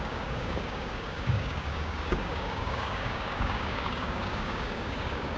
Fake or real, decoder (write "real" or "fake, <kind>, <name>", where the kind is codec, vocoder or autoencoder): fake, codec, DAC